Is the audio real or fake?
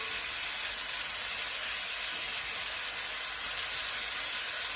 real